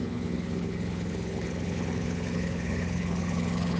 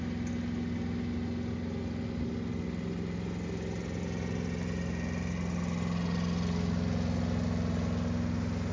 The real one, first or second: second